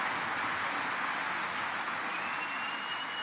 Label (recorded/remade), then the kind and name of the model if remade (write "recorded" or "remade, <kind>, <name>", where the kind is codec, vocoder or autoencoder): recorded